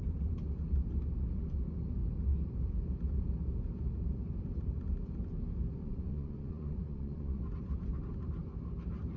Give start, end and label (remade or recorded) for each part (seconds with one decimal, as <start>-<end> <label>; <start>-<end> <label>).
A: 0.0-5.8 recorded; 5.8-7.4 remade; 7.4-9.2 recorded